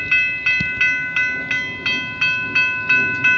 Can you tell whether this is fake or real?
real